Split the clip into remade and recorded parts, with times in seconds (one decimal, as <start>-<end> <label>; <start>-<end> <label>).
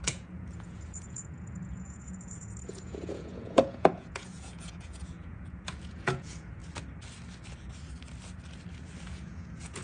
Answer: 0.0-6.6 remade; 6.6-9.1 recorded; 9.1-9.8 remade